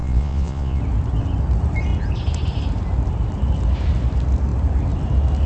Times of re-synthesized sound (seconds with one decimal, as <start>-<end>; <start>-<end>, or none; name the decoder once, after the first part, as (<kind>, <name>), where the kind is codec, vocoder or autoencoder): 0.0-0.8 (vocoder, Vocos)